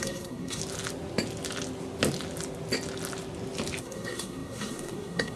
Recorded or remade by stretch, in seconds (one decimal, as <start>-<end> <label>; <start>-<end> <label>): 0.0-0.6 remade; 0.6-3.8 recorded; 3.8-5.4 remade

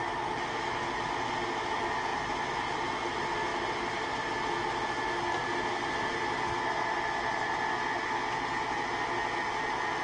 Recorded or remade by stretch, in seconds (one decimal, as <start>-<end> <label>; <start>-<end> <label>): 0.0-2.1 recorded; 2.1-2.8 remade; 2.8-10.0 recorded

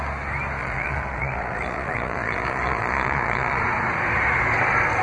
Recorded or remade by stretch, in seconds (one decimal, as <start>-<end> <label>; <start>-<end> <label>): 0.0-0.6 recorded; 0.6-3.6 remade; 3.6-5.0 recorded

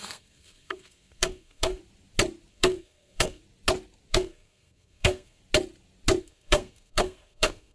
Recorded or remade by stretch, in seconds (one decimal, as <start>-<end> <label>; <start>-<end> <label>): 0.0-1.8 remade; 1.8-2.5 recorded; 2.5-3.4 remade; 3.4-4.1 recorded; 4.1-5.4 remade; 5.4-6.2 recorded; 6.2-7.7 remade